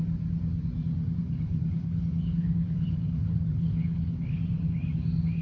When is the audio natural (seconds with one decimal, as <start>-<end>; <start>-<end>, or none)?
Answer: 0.0-1.2; 4.4-5.4